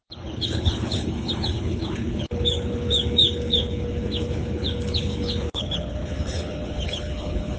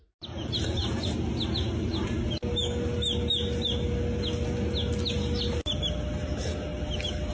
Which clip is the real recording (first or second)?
second